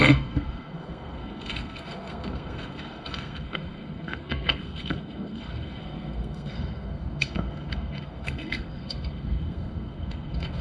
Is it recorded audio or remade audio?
remade